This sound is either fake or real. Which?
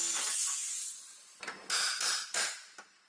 real